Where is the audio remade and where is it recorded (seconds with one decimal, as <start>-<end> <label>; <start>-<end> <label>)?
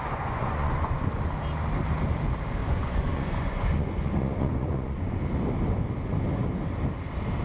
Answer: 0.0-1.1 remade; 1.1-2.6 recorded; 2.6-5.2 remade; 5.2-7.4 recorded